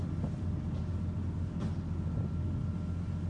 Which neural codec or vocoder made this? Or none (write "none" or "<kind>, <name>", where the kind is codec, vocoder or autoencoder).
none